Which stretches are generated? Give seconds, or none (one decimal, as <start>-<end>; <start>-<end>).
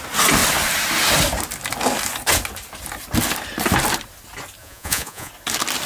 4.6-5.3